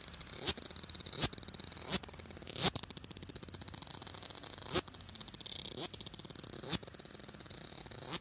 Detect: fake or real real